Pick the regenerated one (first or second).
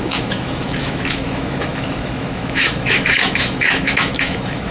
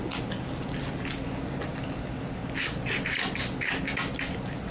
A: first